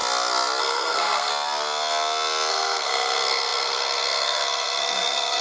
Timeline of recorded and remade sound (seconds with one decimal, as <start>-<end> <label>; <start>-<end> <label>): 0.0-0.6 recorded; 0.6-1.3 remade; 1.3-2.5 recorded; 2.5-5.4 remade